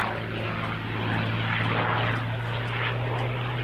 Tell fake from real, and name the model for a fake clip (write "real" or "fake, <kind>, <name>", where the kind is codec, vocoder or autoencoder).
real